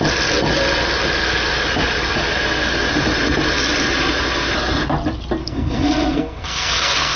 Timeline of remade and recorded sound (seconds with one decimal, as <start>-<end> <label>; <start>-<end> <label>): 0.0-5.4 recorded; 5.4-7.2 remade